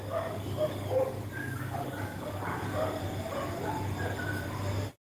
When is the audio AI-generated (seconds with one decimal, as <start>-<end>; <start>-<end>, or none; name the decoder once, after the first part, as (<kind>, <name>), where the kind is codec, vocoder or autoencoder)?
0.0-3.0 (codec, DAC)